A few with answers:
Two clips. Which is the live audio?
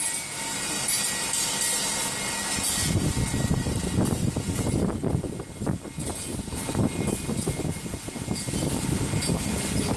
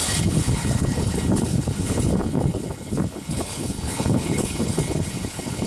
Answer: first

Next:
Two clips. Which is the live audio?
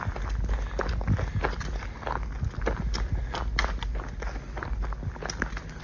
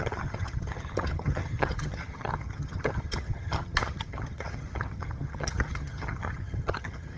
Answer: first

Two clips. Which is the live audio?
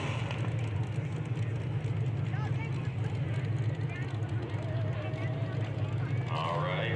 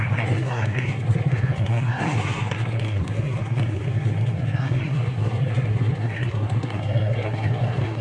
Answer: first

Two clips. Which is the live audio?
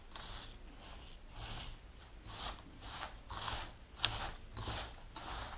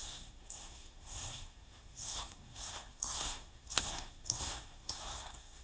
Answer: first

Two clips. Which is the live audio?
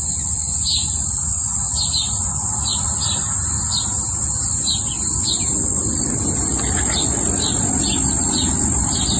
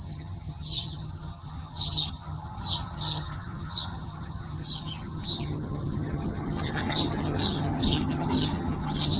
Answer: first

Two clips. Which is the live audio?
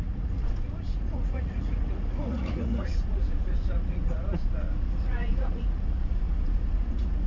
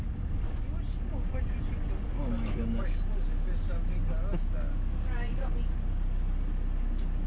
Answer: second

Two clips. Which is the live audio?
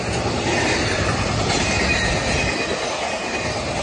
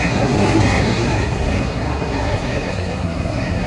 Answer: first